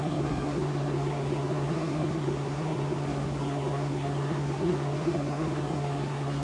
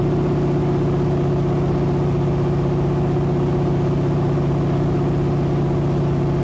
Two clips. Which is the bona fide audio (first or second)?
second